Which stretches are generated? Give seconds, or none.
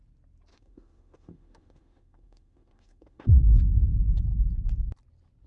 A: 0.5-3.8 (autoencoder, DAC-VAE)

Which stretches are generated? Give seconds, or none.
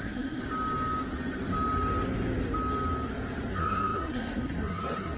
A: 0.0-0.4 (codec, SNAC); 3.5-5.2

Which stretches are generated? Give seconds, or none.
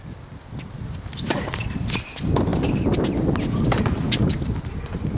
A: none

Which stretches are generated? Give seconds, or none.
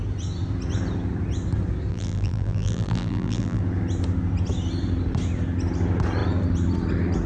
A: 1.9-3.6 (vocoder, BigVGAN v2)